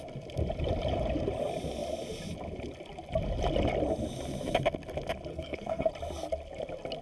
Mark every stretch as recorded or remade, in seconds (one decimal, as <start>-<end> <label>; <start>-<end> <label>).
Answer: 0.0-5.3 recorded; 5.3-5.9 remade; 5.9-7.0 recorded